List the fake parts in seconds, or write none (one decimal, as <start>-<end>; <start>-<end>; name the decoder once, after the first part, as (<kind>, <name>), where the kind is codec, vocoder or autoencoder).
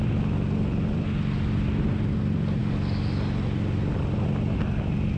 none